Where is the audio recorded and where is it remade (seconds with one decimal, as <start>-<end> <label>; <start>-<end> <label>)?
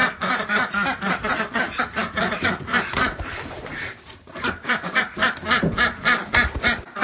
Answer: 0.0-0.7 remade; 0.7-1.3 recorded; 1.3-5.0 remade; 5.0-7.0 recorded